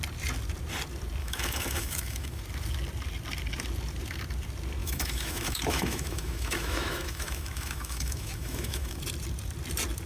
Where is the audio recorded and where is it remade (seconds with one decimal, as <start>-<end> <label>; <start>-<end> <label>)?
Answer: 0.0-1.2 recorded; 1.2-2.4 remade; 2.4-4.8 recorded; 4.8-9.0 remade; 9.0-10.1 recorded